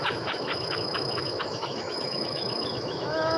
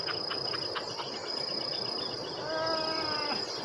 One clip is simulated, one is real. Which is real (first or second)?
second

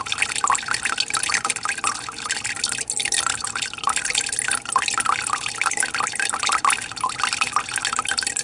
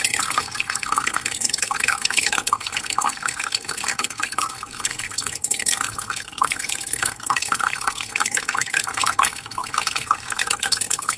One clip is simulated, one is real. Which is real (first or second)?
first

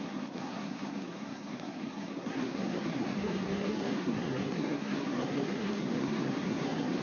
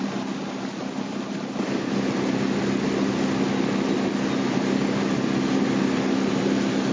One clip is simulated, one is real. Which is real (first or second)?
second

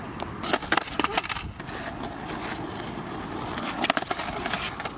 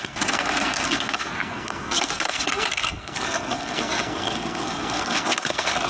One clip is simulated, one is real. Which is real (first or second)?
first